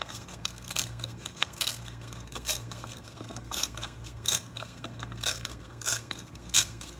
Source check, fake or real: fake